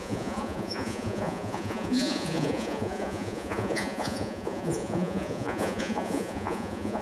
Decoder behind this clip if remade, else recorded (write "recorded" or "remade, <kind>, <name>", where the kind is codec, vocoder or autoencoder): remade, vocoder, Vocos